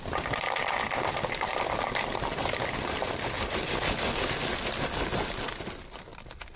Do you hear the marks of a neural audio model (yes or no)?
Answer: no